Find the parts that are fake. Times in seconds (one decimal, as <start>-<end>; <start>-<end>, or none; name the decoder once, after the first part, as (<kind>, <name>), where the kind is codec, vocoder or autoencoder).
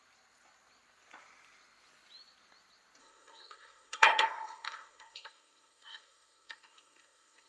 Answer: 3.0-7.5 (codec, SNAC)